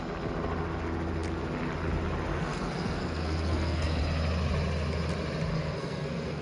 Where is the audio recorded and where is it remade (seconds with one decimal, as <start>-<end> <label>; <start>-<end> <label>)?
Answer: 0.0-2.3 recorded; 2.3-4.0 remade; 4.0-5.5 recorded; 5.5-6.4 remade